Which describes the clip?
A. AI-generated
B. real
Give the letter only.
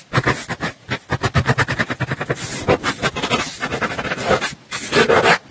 A